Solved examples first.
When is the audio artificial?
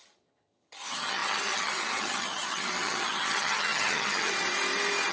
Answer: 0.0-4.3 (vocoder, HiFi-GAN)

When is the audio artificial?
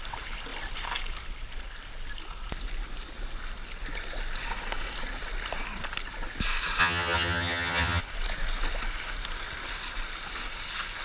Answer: 6.8-8.0 (vocoder, HiFi-GAN)